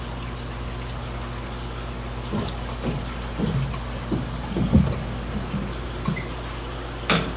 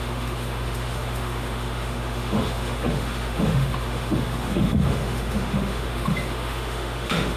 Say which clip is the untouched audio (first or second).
first